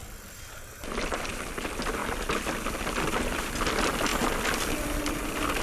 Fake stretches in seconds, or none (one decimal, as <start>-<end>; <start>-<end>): none